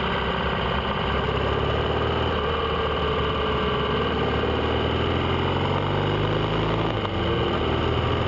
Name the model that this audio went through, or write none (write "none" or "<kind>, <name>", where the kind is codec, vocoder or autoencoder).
none